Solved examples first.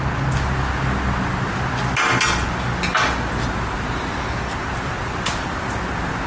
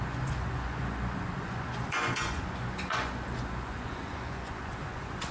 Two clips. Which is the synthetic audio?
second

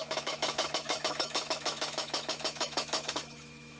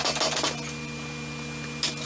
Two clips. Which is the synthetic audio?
first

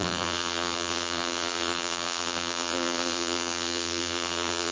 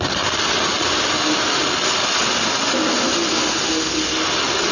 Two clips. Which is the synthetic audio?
first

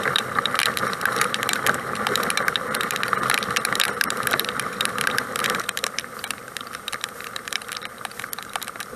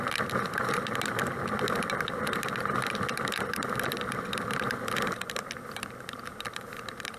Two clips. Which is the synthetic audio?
first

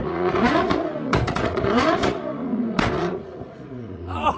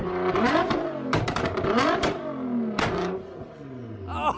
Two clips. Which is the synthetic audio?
first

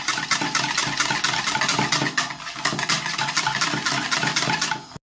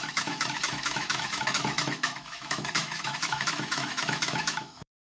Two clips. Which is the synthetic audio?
second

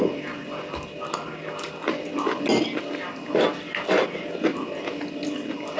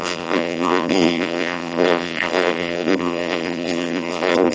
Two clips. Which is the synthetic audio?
second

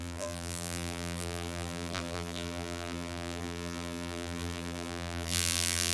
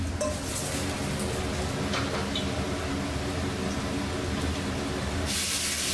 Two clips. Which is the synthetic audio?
first